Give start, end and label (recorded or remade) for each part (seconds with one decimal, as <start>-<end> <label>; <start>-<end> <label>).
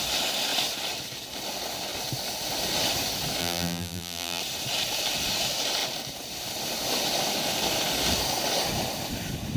0.0-3.4 recorded; 3.4-4.4 remade; 4.4-9.6 recorded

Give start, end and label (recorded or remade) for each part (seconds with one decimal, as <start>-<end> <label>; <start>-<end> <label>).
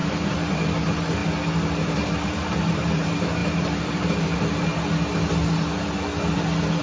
0.0-1.2 remade; 1.2-2.3 recorded; 2.3-4.7 remade; 4.7-6.8 recorded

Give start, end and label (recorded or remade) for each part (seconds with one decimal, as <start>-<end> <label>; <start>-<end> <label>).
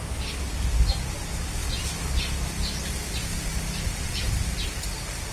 0.0-5.3 recorded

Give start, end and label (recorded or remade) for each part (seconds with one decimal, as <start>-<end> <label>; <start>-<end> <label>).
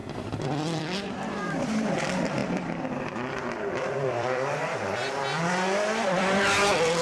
0.0-0.8 recorded; 0.8-2.4 remade; 2.4-3.7 recorded; 3.7-7.0 remade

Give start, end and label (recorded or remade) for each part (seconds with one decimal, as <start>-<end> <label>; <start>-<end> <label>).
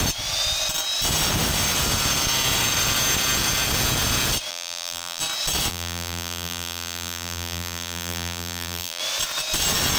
0.0-4.5 recorded; 4.5-5.2 remade; 5.2-5.7 recorded; 5.7-9.0 remade; 9.0-10.0 recorded